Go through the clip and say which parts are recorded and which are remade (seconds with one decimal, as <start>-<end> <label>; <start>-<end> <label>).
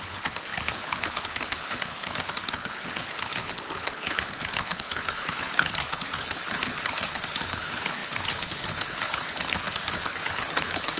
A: 0.0-11.0 remade